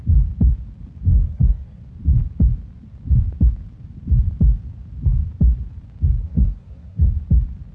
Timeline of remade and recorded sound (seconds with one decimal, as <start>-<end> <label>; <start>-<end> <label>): 0.0-1.1 recorded; 1.1-1.8 remade; 1.8-6.2 recorded; 6.2-7.1 remade; 7.1-7.7 recorded